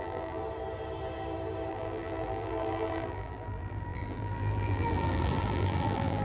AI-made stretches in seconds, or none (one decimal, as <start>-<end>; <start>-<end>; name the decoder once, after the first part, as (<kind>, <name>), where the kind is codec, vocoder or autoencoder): 0.0-0.4 (vocoder, BigVGAN v2); 1.7-6.2